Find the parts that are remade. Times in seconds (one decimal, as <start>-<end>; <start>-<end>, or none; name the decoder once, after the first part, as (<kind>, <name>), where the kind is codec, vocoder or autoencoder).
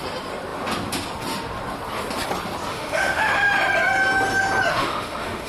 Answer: 2.7-3.5 (autoencoder, DAC-VAE); 4.7-5.5